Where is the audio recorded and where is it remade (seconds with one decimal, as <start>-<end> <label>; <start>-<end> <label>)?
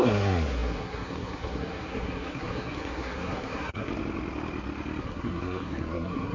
0.0-3.9 remade; 3.9-5.0 recorded; 5.0-6.3 remade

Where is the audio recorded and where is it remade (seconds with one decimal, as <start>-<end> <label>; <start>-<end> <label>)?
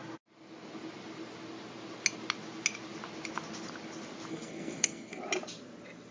0.0-4.3 recorded; 4.3-5.2 remade; 5.2-6.1 recorded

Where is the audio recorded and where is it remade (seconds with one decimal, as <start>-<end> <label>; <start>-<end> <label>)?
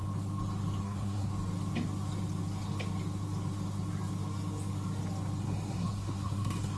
0.0-0.8 recorded; 0.8-1.3 remade; 1.3-5.4 recorded; 5.4-6.8 remade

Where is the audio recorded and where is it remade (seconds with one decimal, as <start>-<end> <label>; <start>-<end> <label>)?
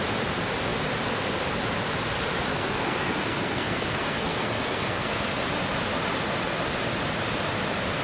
0.0-2.5 recorded; 2.5-5.4 remade; 5.4-8.0 recorded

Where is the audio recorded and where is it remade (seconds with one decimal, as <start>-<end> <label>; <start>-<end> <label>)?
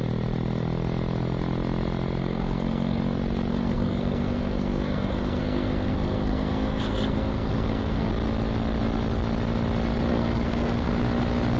0.0-2.2 recorded; 2.2-3.0 remade; 3.0-3.5 recorded; 3.5-8.1 remade; 8.1-10.1 recorded; 10.1-10.9 remade; 10.9-11.6 recorded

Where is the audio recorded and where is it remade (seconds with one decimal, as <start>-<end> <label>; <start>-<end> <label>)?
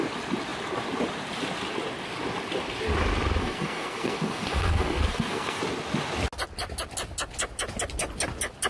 0.0-3.4 recorded; 3.4-5.6 remade; 5.6-8.7 recorded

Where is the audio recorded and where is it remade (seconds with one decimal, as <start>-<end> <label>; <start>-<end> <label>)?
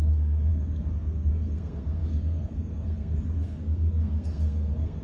0.0-5.0 remade